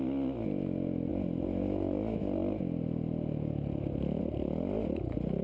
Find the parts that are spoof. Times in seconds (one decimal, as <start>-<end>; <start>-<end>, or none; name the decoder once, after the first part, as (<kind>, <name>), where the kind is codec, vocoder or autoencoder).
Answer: none